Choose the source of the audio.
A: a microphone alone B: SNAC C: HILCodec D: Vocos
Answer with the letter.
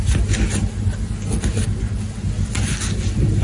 A